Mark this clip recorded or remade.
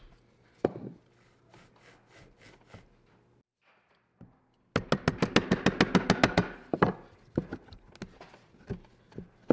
recorded